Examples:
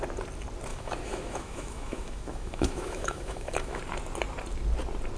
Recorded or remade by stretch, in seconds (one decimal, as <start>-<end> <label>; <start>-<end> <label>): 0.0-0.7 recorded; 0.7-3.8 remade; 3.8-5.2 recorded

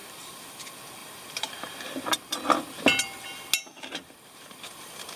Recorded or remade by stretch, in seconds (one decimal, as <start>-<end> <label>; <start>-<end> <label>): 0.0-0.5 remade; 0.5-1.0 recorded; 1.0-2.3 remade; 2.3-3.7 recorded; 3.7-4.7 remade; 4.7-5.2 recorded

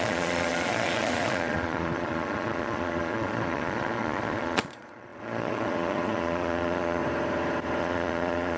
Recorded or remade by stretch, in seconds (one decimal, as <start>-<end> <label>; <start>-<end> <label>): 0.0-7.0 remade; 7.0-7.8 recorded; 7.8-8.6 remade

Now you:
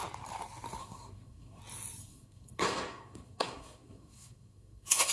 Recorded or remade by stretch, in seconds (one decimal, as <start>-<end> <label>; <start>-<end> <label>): 0.0-0.8 recorded; 0.8-1.6 remade; 1.6-2.0 recorded; 2.0-5.1 remade

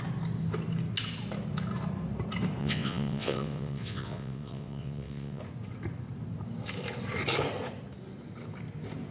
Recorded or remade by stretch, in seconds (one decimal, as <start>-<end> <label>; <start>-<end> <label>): 0.0-2.6 recorded; 2.6-5.4 remade; 5.4-9.1 recorded

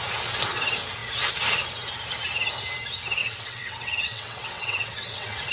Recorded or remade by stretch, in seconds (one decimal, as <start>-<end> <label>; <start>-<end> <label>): 0.0-3.2 recorded; 3.2-5.5 remade